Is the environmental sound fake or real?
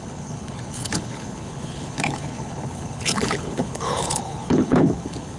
fake